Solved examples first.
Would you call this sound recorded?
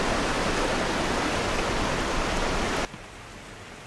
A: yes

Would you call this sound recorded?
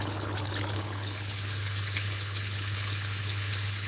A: no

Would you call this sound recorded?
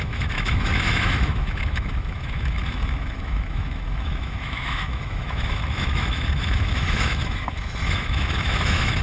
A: no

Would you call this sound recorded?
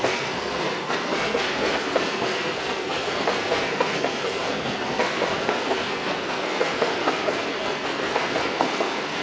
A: no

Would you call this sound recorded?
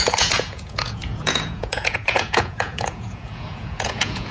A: no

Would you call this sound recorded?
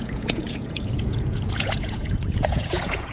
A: no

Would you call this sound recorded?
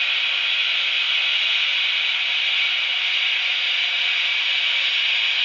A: yes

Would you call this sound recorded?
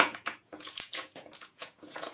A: no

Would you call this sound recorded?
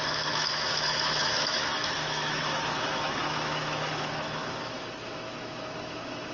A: no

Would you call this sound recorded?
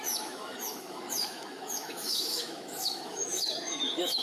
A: no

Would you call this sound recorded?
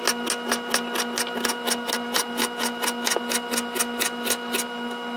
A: yes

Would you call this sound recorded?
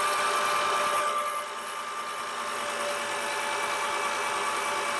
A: yes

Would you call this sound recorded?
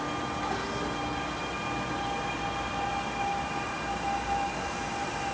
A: yes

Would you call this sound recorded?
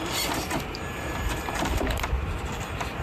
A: yes